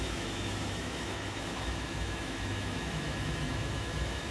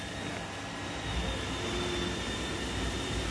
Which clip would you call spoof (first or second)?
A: first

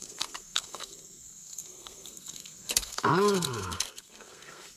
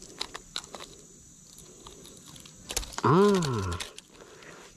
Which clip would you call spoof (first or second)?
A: first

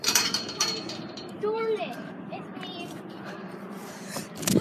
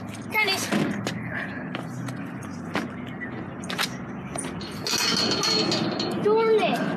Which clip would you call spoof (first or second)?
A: first